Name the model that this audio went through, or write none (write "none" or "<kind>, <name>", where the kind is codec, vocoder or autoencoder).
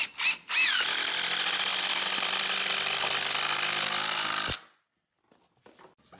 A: none